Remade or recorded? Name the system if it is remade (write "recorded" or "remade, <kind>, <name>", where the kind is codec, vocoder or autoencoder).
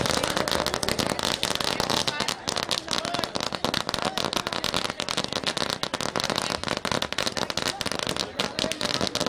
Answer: recorded